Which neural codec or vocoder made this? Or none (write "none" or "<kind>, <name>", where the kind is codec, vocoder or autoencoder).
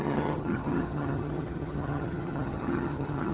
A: vocoder, HiFi-GAN